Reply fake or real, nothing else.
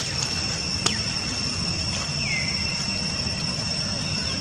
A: real